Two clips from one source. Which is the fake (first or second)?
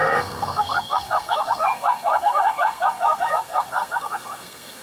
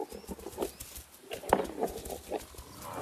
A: first